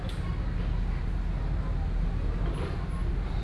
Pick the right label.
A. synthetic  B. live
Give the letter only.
B